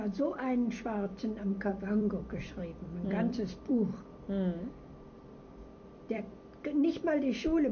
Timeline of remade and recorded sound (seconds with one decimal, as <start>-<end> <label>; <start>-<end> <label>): 0.0-1.7 recorded; 1.7-6.3 remade; 6.3-7.7 recorded